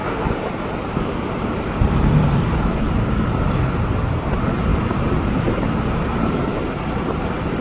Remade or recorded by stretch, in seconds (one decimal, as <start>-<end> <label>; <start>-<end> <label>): 0.0-0.7 recorded; 0.7-7.6 remade